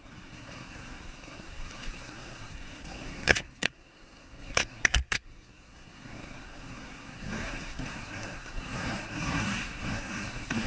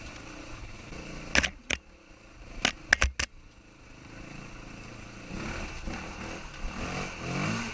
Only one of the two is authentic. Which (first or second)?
second